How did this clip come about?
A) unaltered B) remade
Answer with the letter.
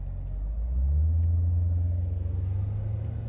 A